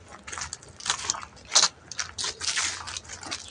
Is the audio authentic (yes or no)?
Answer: yes